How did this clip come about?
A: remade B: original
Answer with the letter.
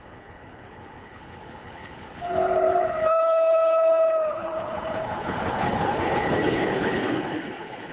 A